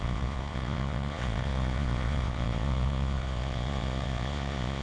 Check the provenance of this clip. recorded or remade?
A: remade